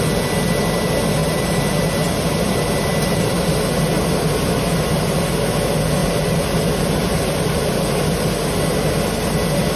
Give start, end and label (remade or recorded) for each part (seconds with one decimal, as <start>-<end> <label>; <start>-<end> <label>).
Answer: 0.0-1.2 recorded; 1.2-3.4 remade; 3.4-6.0 recorded; 6.0-8.3 remade; 8.3-9.8 recorded